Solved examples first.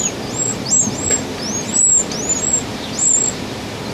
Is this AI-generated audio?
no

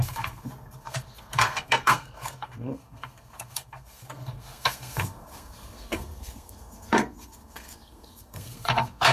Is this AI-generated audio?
yes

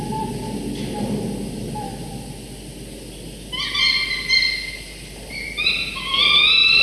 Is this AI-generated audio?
no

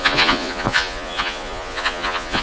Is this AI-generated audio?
yes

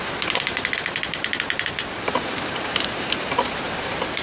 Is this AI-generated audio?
yes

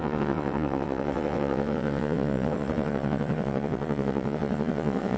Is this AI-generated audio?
yes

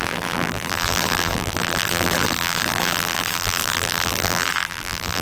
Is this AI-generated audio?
yes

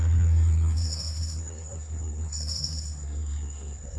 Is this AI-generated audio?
yes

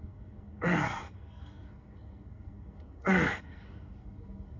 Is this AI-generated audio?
yes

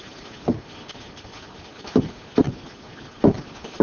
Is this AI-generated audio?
no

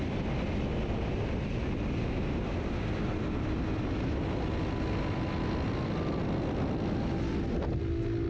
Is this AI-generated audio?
no